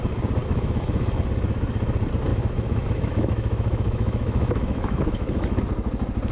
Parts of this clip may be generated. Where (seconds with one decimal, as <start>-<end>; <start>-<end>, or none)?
0.4-1.1; 2.3-5.6